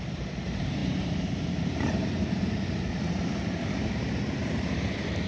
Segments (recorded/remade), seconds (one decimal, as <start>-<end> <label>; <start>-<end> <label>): 0.0-5.3 remade